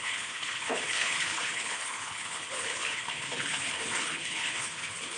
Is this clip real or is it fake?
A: fake